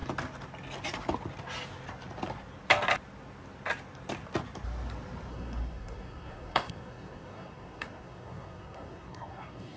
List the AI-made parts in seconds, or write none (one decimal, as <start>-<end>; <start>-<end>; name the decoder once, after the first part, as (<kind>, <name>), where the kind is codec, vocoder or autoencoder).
5.3-9.8 (codec, SNAC)